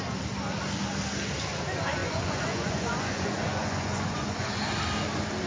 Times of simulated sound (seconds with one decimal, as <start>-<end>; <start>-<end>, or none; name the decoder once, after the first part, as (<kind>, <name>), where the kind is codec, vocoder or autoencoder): 2.0-4.6 (vocoder, Vocos)